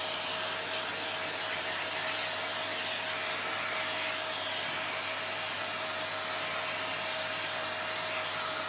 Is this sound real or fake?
real